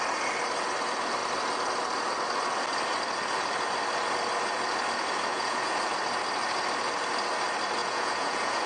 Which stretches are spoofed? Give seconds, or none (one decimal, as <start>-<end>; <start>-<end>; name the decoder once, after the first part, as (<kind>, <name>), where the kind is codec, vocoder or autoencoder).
5.3-5.8 (vocoder, Vocos); 7.8-8.7